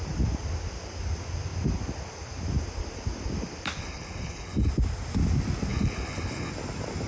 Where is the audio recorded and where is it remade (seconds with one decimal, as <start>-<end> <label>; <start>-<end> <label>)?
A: 0.0-3.8 recorded; 3.8-4.7 remade; 4.7-5.7 recorded; 5.7-6.5 remade; 6.5-7.1 recorded